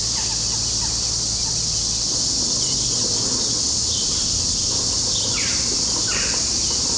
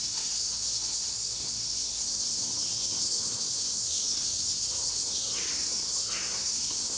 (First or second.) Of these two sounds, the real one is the first